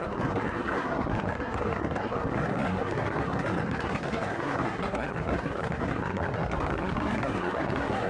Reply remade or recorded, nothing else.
remade